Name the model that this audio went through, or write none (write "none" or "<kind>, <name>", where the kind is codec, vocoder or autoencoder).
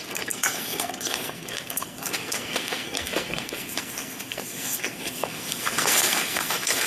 codec, SNAC